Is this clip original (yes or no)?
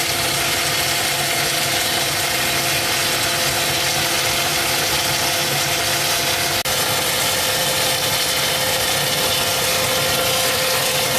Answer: yes